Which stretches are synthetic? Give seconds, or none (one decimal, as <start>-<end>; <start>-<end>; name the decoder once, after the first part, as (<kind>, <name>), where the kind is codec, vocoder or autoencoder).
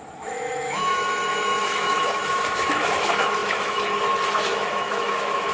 0.0-5.5 (autoencoder, DAC-VAE)